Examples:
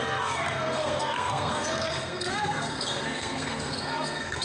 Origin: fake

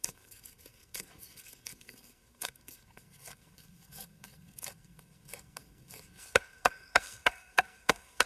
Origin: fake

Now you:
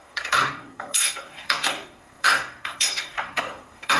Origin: fake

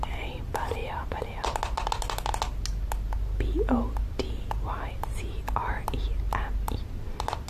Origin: real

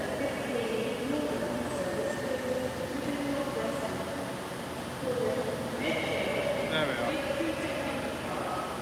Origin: real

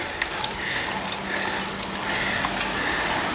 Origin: real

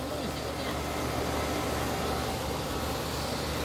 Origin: real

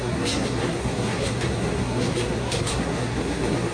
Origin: fake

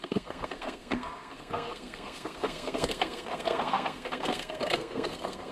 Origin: fake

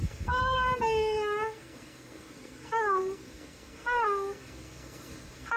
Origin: fake